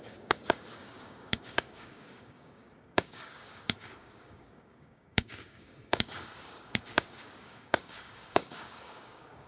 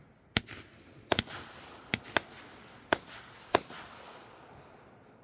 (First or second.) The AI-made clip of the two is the first